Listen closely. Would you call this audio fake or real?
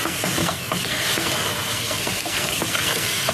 fake